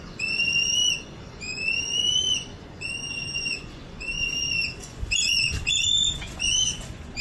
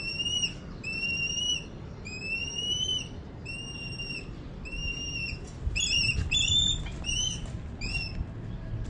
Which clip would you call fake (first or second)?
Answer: first